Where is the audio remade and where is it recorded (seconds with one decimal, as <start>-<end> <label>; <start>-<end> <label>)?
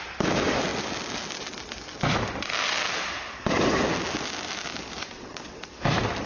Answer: 0.0-5.0 recorded; 5.0-5.7 remade; 5.7-6.3 recorded